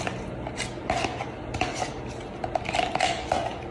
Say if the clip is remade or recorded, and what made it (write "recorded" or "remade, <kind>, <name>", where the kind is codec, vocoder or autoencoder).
recorded